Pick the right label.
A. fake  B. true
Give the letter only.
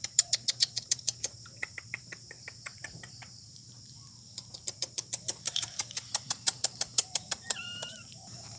A